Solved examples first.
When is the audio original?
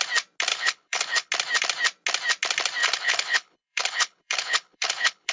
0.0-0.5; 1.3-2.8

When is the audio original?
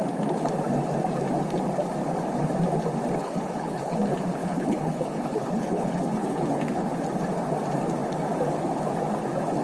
0.0-3.2; 4.0-4.4; 6.9-9.6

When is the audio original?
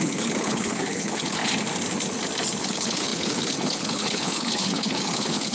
1.4-2.6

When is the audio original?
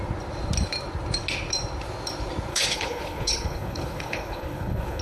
0.0-2.5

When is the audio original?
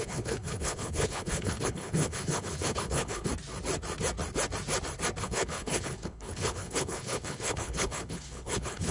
3.3-5.2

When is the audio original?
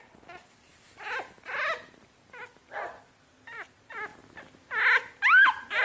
0.0-5.8